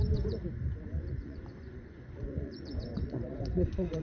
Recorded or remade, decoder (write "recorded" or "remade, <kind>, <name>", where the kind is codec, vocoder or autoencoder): remade, vocoder, Vocos